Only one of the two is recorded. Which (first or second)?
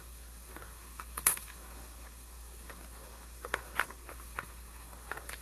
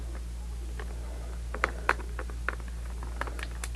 second